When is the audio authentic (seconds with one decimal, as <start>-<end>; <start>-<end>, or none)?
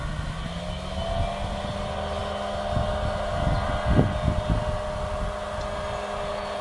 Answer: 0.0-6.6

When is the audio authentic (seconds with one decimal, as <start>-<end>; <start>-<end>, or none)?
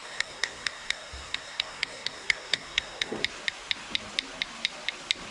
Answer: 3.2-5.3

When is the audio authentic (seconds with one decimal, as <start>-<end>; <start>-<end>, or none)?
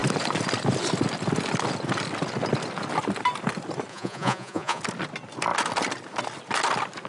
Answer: 0.0-3.9; 4.8-7.1